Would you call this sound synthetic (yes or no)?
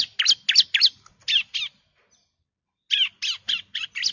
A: no